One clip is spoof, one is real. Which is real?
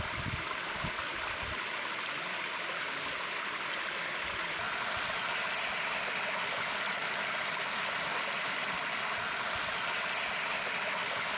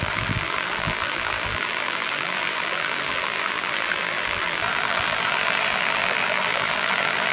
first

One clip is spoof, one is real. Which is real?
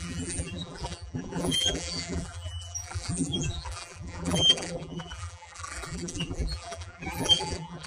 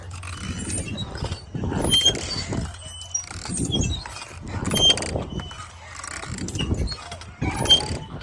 second